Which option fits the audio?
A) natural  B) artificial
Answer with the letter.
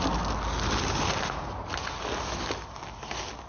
A